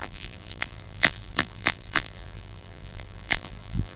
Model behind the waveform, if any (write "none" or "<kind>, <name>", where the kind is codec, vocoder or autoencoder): vocoder, BigVGAN v2